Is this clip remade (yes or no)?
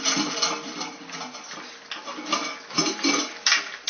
no